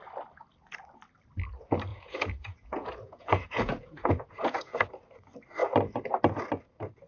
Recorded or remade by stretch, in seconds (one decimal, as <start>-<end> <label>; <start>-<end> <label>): 0.0-1.9 recorded; 1.9-4.9 remade; 4.9-7.1 recorded